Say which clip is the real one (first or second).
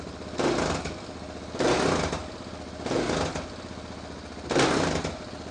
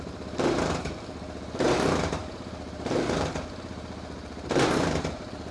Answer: first